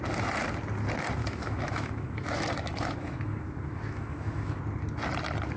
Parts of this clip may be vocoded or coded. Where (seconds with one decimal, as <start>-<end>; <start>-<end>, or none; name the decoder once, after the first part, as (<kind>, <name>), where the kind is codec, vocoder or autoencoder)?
1.2-4.6 (autoencoder, DAC-VAE)